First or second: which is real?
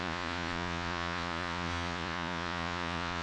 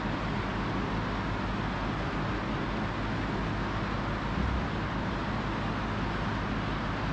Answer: second